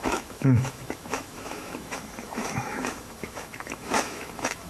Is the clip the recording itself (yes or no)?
no